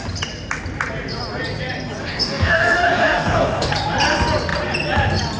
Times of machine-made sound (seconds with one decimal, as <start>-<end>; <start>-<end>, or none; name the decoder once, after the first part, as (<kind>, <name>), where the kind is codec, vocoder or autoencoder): 2.0-3.7 (codec, DAC)